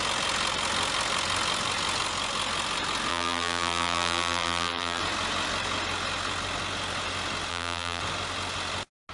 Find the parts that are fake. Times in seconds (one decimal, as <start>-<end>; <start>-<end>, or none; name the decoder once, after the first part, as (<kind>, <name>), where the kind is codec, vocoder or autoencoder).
3.1-5.0 (vocoder, BigVGAN v2); 7.5-8.0